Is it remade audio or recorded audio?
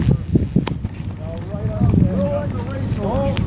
recorded